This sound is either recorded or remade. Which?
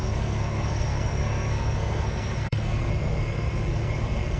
remade